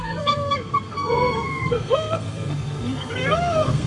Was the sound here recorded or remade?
remade